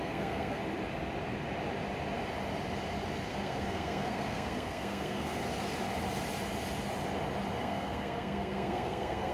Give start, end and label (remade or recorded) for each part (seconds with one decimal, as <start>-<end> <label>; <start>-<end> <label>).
0.0-0.6 remade; 0.6-3.3 recorded; 3.3-5.4 remade; 5.4-7.6 recorded; 7.6-9.3 remade